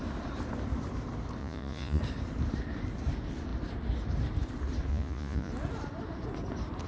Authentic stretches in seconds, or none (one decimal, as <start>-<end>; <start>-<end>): 0.0-1.4; 2.0-4.9; 5.5-6.9